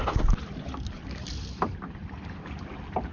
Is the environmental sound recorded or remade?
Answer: recorded